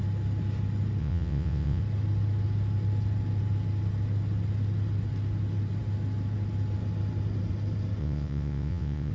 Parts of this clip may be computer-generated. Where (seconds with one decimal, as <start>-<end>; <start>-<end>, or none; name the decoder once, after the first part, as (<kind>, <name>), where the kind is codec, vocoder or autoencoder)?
1.0-1.8 (vocoder, WaveNeXt); 8.0-9.1